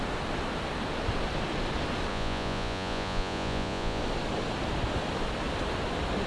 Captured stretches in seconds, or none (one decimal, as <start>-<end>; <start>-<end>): 0.0-2.1; 4.0-6.3